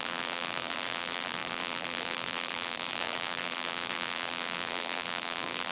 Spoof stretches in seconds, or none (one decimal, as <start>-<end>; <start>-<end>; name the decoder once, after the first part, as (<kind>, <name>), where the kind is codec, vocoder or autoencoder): 0.0-5.7 (vocoder, BigVGAN v2)